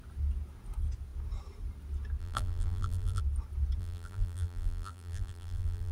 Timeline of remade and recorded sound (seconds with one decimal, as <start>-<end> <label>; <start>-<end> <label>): 0.0-2.2 recorded; 2.2-3.2 remade; 3.2-3.8 recorded; 3.8-5.9 remade